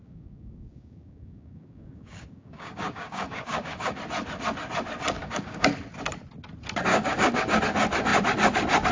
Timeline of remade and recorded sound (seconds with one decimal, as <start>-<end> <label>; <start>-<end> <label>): 0.0-4.0 remade; 4.0-5.2 recorded; 5.2-5.7 remade; 5.7-6.9 recorded; 6.9-7.6 remade; 7.6-8.9 recorded